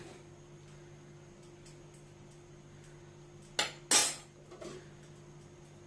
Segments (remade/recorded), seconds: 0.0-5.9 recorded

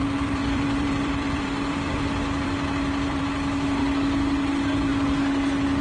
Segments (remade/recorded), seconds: 0.0-3.2 remade; 3.2-5.8 recorded

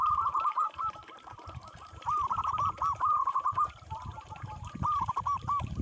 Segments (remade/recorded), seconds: 0.0-5.8 remade